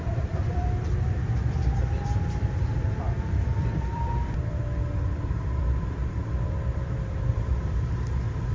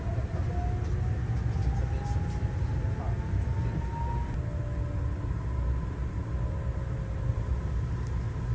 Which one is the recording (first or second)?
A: second